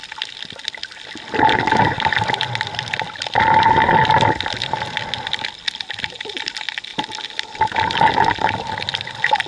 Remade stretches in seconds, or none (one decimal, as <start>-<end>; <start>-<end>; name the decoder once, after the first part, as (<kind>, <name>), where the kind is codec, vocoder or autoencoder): none